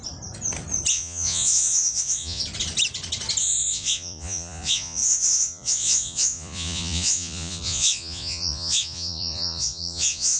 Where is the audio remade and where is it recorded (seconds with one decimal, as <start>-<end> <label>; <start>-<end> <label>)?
0.0-0.9 recorded; 0.9-2.4 remade; 2.4-3.4 recorded; 3.4-10.4 remade